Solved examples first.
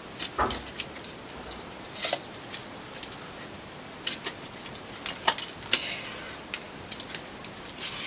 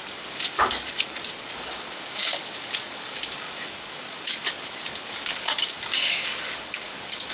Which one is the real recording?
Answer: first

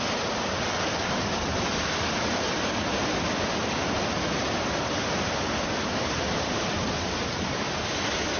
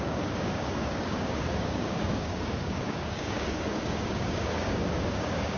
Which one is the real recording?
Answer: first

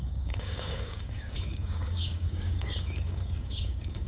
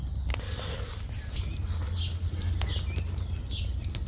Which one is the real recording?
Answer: second